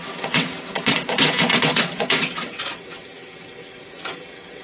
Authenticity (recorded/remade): remade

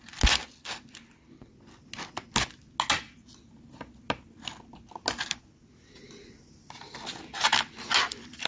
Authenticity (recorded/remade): recorded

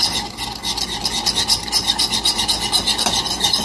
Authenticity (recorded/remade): recorded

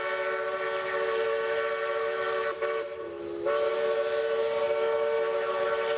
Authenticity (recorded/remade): recorded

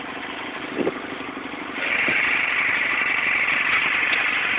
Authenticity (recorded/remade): recorded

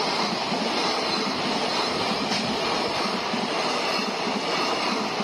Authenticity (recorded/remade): recorded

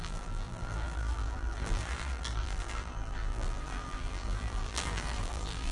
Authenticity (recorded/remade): remade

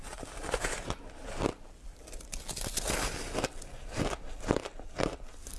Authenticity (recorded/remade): recorded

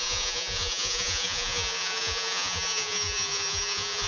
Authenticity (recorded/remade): remade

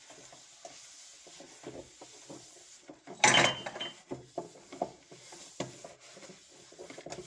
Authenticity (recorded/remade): recorded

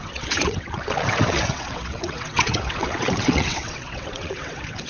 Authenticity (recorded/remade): remade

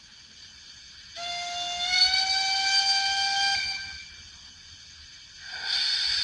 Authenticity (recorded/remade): recorded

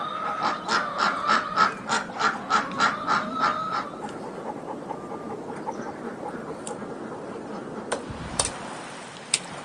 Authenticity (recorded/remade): remade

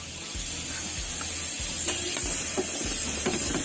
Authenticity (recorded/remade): recorded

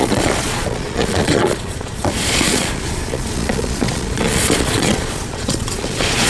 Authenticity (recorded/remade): remade